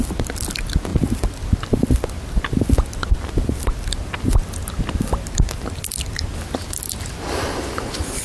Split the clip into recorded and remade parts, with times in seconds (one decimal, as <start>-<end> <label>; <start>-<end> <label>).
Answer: 0.0-8.2 recorded